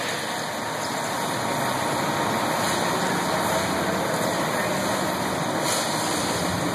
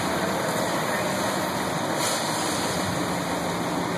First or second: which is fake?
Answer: second